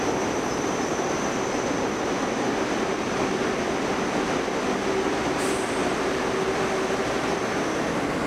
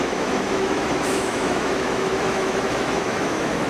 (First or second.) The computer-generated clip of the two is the second